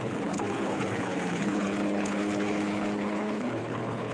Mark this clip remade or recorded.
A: remade